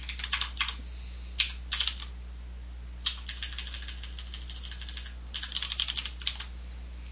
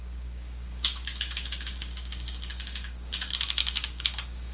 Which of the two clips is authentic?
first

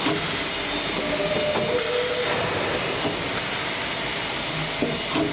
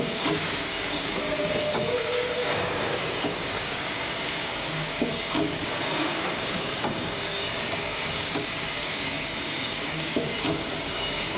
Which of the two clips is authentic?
first